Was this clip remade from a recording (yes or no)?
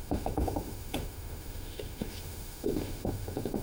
yes